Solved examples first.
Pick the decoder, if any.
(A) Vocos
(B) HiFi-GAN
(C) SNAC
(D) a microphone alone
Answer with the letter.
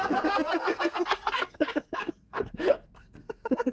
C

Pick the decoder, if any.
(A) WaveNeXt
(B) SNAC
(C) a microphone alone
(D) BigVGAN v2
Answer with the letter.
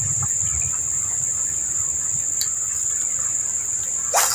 C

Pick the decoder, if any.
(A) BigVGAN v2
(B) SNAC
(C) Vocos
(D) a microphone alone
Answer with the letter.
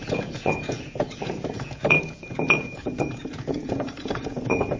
C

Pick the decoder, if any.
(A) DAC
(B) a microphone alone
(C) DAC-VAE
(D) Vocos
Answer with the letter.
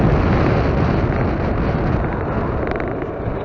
B